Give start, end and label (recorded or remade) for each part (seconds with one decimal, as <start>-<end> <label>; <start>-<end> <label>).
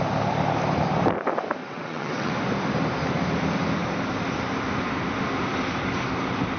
0.0-1.6 recorded; 1.6-2.3 remade; 2.3-6.6 recorded